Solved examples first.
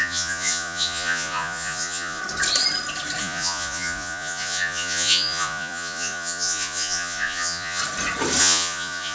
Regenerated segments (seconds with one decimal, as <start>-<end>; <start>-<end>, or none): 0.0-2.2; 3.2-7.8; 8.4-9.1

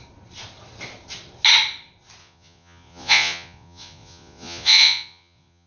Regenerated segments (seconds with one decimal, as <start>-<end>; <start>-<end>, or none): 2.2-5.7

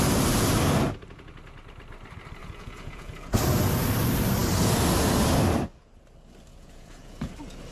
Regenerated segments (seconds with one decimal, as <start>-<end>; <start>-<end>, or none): 2.4-3.3; 6.5-7.3